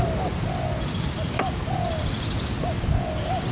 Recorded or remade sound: recorded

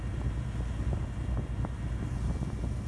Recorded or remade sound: recorded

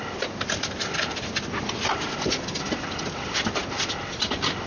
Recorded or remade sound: recorded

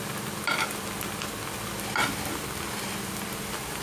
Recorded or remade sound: recorded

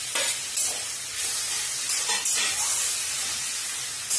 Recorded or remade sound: recorded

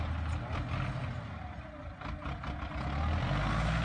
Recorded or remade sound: recorded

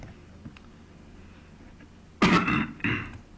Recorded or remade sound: recorded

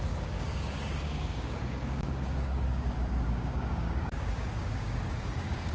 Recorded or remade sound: remade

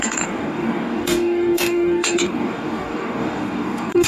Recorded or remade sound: remade